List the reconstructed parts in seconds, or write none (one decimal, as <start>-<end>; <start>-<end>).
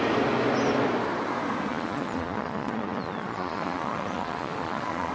1.7-5.1